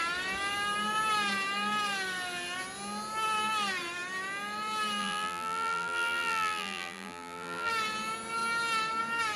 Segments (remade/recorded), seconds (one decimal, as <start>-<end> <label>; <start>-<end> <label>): 0.0-5.0 recorded; 5.0-7.7 remade; 7.7-9.4 recorded